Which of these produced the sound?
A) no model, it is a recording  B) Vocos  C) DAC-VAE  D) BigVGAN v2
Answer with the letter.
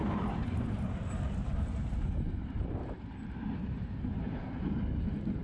D